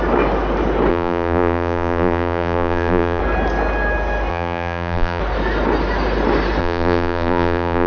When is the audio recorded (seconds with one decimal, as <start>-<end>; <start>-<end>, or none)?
0.0-0.9; 3.2-4.3; 5.2-6.6